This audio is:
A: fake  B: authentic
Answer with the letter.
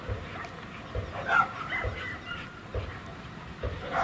B